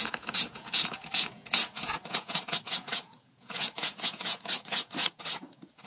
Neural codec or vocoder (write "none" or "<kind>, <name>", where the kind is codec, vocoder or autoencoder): vocoder, Vocos